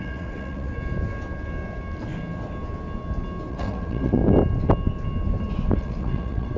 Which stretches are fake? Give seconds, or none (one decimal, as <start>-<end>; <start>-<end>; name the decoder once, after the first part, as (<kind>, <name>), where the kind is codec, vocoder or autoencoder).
0.0-0.7 (vocoder, WaveNeXt); 3.5-4.2; 5.8-6.6